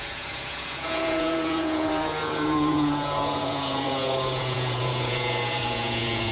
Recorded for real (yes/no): no